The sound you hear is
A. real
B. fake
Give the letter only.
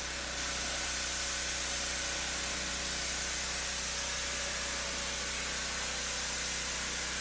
A